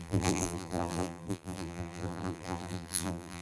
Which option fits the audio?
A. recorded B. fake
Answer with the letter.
B